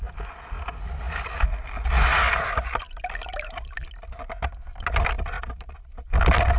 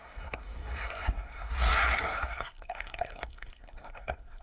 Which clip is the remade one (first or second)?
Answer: second